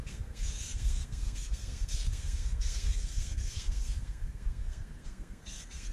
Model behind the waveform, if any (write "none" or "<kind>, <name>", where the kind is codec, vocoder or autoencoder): codec, SNAC